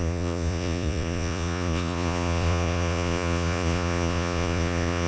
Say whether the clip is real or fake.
fake